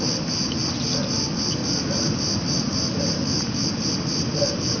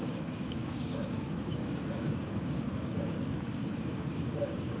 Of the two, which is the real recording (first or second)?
first